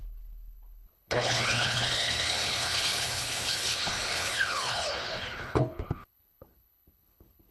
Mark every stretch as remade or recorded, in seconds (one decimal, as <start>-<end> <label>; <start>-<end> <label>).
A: 0.0-7.5 remade